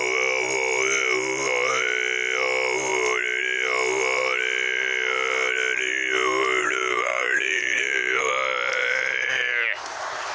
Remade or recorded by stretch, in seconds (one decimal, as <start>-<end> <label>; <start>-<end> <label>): 0.0-6.6 recorded; 6.6-8.3 remade; 8.3-10.3 recorded